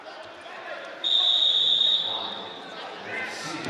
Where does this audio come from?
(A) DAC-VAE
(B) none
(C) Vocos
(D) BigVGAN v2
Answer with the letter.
D